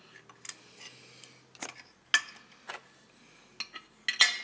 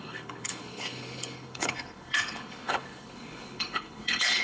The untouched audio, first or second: first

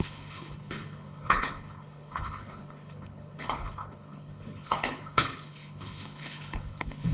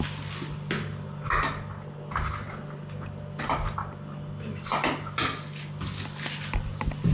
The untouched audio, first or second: second